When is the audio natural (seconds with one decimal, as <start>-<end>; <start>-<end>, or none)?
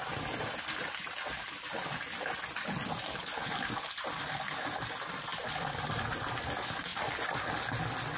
0.9-6.9; 7.4-8.2